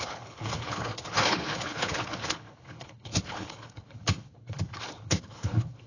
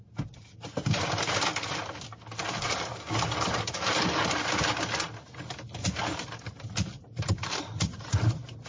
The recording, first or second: second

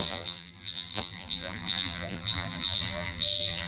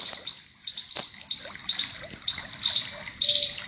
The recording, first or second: second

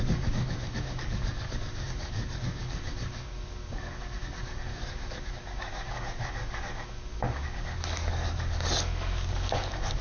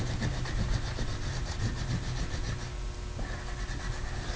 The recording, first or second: second